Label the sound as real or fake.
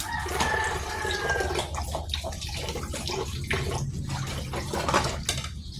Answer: real